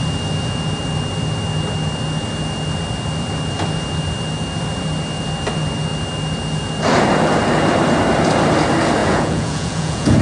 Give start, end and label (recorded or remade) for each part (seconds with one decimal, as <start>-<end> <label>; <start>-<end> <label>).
0.0-9.0 recorded; 9.0-10.2 remade

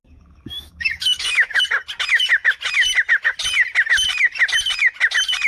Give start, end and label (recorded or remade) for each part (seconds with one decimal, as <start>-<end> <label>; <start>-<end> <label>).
0.0-1.6 remade; 1.6-5.5 recorded

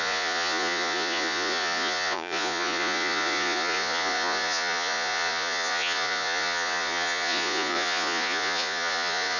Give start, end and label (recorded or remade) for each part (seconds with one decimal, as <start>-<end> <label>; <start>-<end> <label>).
0.0-9.4 remade